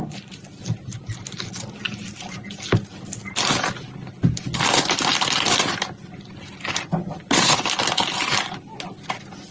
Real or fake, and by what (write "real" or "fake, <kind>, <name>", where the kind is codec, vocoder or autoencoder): real